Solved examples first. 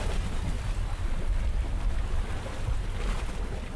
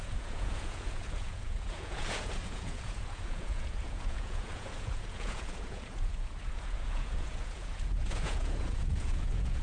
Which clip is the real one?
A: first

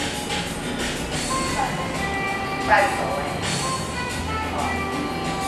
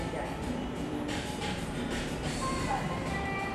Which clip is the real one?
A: first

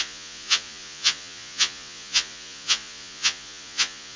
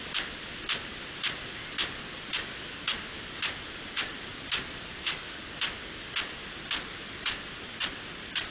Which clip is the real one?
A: second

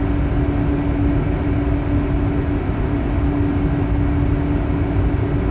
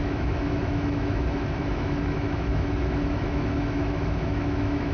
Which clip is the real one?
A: first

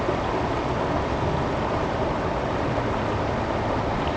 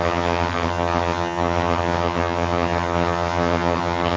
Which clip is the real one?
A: first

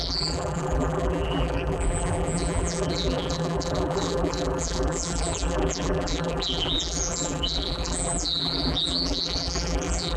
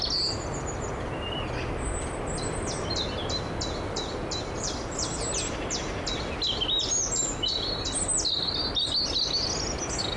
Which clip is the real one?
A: second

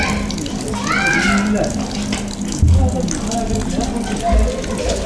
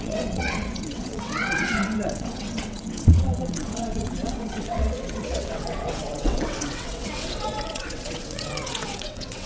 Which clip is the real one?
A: first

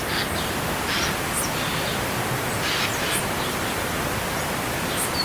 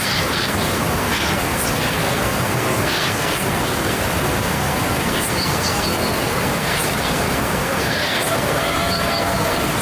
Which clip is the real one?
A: first